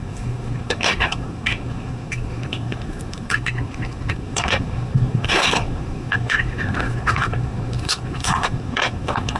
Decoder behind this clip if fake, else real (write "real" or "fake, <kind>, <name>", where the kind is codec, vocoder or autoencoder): fake, codec, SNAC